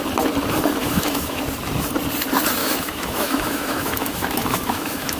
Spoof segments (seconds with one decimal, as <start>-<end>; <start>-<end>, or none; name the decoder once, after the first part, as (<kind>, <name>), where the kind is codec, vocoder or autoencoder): 0.8-1.4 (autoencoder, DAC-VAE); 2.6-5.2